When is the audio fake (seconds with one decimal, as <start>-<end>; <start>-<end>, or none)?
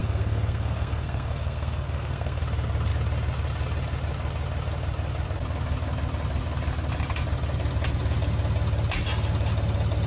0.0-2.4